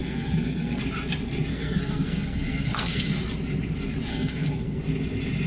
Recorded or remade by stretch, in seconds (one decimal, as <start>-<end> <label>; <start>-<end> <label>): 0.0-0.8 remade; 0.8-1.5 recorded; 1.5-3.1 remade; 3.1-4.1 recorded; 4.1-4.8 remade; 4.8-5.5 recorded